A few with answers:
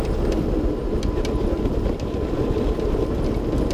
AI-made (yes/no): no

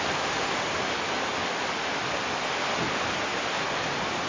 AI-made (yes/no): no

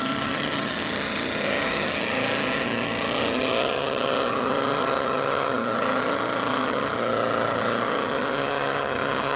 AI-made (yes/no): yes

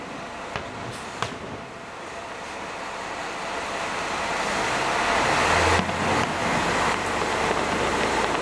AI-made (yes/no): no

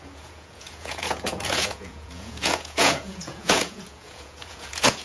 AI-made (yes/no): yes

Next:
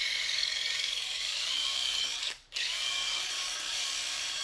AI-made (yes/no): yes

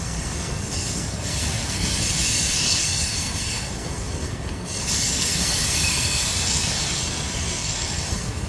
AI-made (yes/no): yes